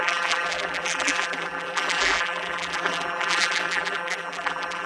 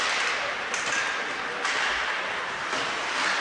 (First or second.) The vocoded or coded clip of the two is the first